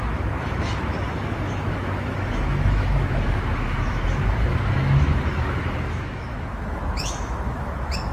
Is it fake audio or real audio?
fake